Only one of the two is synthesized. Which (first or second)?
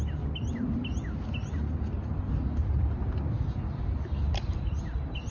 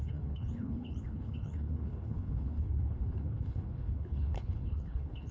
second